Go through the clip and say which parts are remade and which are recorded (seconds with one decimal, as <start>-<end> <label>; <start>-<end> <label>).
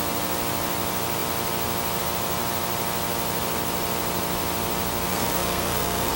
0.0-5.1 recorded; 5.1-6.2 remade